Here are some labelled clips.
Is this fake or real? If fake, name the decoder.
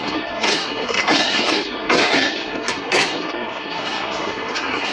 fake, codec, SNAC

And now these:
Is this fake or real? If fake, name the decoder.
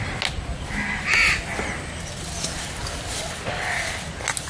real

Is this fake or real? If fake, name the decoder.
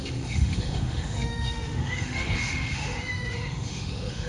fake, autoencoder, DAC-VAE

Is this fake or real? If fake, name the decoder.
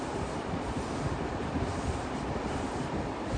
real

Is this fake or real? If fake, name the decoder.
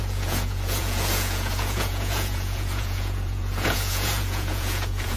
fake, vocoder, Vocos